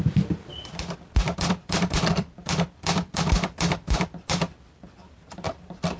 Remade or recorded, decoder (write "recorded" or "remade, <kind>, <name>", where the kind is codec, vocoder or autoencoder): remade, vocoder, BigVGAN v2